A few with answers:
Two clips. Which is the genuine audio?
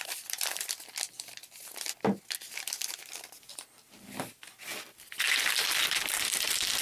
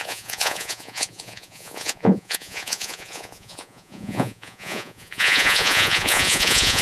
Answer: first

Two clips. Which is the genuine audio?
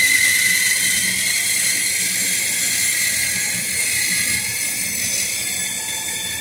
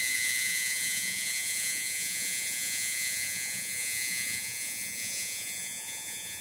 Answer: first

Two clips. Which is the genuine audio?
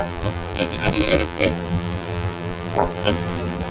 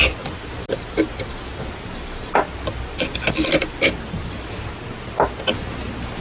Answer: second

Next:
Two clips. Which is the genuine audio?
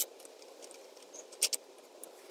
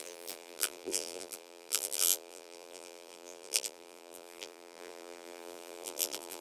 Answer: first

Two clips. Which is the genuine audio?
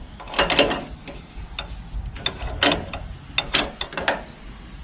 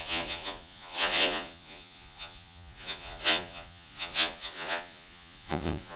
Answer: first